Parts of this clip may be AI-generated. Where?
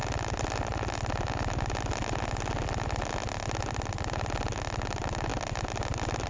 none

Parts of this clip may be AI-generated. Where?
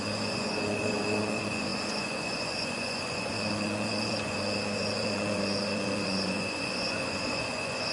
0.0-7.9 (vocoder, Vocos)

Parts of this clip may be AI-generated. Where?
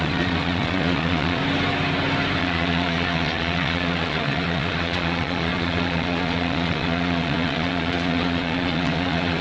0.0-1.4 (vocoder, Vocos); 2.4-9.4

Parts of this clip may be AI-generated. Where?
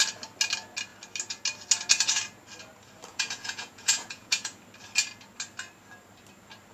3.1-4.6 (vocoder, Vocos)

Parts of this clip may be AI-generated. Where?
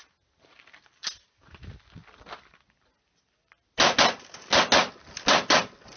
none